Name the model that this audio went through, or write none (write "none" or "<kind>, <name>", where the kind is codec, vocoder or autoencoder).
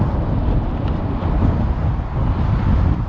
none